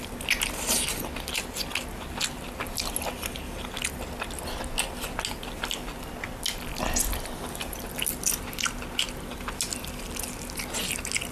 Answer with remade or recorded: recorded